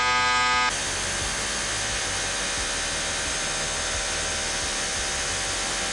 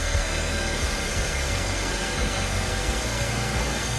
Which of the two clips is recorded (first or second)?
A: first